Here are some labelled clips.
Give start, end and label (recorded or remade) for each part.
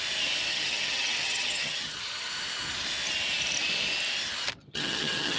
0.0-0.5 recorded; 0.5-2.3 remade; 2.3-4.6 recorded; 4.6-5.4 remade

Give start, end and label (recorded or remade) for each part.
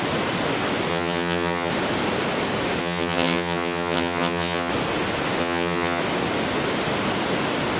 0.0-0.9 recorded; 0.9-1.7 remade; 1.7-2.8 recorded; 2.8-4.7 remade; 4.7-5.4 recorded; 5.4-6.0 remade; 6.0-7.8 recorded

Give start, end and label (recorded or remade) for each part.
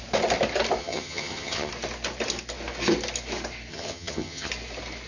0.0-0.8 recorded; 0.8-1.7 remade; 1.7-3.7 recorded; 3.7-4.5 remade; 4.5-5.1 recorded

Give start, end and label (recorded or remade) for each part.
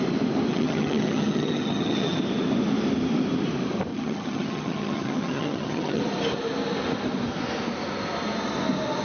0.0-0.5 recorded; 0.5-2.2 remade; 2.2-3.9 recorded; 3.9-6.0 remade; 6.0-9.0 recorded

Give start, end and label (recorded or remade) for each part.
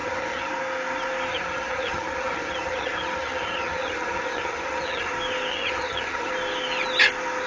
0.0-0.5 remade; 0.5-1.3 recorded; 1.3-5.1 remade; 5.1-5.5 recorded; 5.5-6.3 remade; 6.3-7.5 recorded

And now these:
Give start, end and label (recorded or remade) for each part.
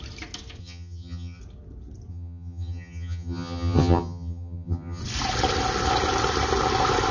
0.0-0.6 recorded; 0.6-1.4 remade; 1.4-2.1 recorded; 2.1-5.0 remade; 5.0-7.1 recorded